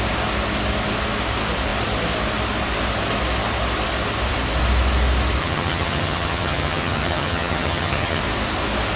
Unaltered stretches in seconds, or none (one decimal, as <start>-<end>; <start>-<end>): 0.0-5.4; 8.2-9.0